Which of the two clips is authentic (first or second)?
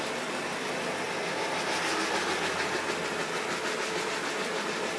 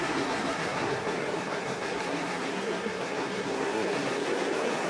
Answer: first